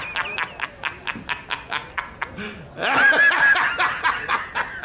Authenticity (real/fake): real